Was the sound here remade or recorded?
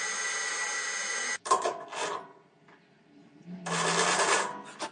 recorded